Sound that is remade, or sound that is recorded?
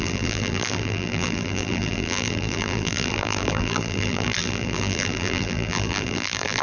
remade